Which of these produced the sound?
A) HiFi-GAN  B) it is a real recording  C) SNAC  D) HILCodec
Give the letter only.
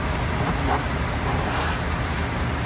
B